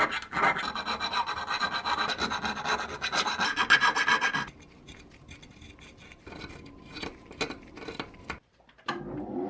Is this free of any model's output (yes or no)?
yes